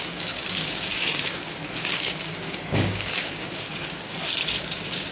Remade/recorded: remade